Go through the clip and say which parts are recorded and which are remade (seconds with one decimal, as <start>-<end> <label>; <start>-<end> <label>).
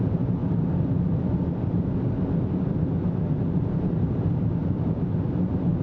0.0-0.4 remade; 0.4-3.7 recorded; 3.7-5.8 remade